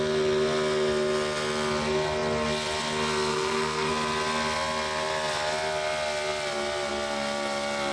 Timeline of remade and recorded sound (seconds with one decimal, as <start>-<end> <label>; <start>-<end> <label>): 0.0-3.3 recorded; 3.3-3.9 remade; 3.9-7.9 recorded